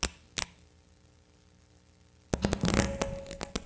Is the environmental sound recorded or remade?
recorded